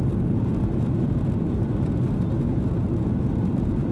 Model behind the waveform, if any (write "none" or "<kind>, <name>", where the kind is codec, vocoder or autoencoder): none